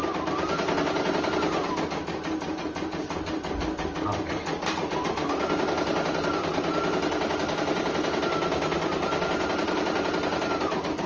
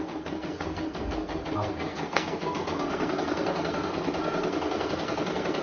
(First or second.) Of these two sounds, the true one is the first